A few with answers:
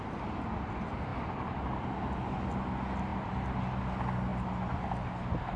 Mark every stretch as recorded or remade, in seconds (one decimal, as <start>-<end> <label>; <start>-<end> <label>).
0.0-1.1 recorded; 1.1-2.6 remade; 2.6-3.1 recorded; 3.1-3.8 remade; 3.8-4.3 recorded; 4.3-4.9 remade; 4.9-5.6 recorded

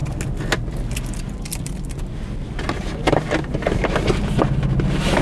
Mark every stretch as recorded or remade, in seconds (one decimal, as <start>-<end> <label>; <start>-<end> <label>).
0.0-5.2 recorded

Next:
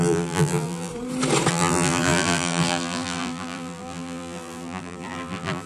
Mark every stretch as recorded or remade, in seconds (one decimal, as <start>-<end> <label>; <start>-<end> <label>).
0.0-0.9 remade; 0.9-1.5 recorded; 1.5-5.7 remade